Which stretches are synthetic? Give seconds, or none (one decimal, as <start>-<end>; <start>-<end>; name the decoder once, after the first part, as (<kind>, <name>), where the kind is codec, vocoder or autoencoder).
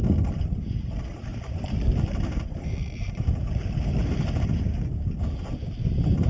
1.3-5.1 (vocoder, BigVGAN v2)